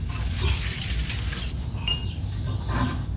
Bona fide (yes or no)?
yes